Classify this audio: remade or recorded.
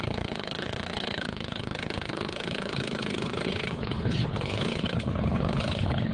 remade